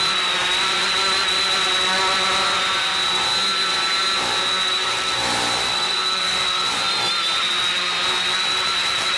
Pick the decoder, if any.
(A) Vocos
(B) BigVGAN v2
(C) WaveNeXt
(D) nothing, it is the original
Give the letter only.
B